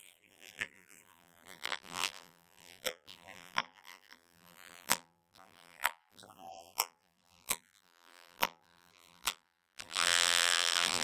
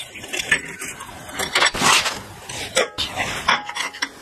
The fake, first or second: first